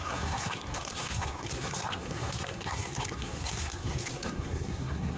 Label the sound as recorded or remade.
remade